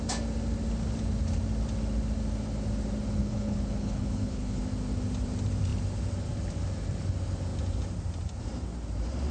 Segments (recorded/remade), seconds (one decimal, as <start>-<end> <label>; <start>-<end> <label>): 0.0-3.2 recorded; 3.2-4.6 remade; 4.6-9.3 recorded